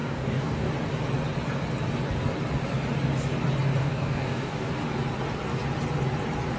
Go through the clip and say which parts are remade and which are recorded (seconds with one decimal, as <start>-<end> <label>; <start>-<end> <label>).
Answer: 0.0-0.7 remade; 0.7-3.8 recorded; 3.8-4.7 remade; 4.7-6.6 recorded